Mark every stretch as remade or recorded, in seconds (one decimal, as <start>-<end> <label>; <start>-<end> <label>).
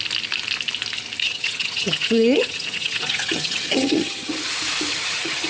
0.0-1.2 recorded; 1.2-4.5 remade; 4.5-4.9 recorded; 4.9-5.5 remade